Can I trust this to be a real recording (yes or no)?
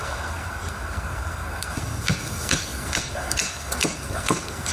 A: no